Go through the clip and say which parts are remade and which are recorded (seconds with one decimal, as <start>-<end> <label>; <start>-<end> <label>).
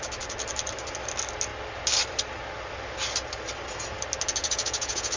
0.0-4.4 recorded; 4.4-5.2 remade